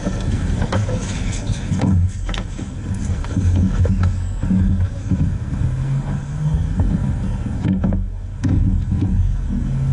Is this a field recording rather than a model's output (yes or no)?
no